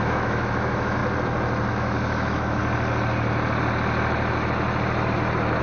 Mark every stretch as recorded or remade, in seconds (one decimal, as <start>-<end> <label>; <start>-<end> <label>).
0.0-1.0 remade; 1.0-1.7 recorded; 1.7-2.6 remade; 2.6-5.6 recorded